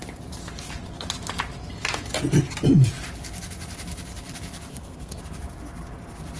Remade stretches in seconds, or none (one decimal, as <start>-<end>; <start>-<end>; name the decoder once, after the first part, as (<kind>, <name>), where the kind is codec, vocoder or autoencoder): 4.7-5.2 (codec, SNAC)